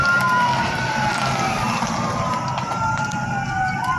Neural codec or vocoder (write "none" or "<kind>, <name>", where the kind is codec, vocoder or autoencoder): none